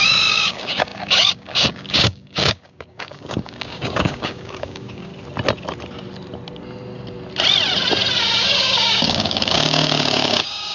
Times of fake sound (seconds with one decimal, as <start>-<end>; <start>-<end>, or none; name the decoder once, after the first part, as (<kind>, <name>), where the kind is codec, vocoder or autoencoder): 0.0-5.1 (codec, DAC); 8.2-10.7